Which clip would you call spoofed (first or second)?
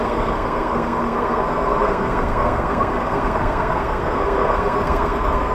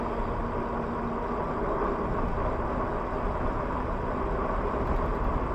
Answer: first